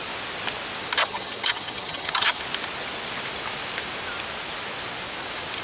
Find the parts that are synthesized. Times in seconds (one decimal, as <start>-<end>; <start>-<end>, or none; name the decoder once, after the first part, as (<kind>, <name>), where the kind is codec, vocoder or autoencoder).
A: 1.0-2.4 (vocoder, HiFi-GAN)